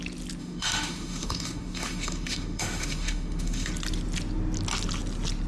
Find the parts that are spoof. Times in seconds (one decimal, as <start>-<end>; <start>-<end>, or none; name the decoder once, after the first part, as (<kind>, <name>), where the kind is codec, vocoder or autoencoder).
0.4-3.7 (autoencoder, DAC-VAE)